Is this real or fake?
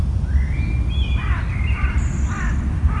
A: real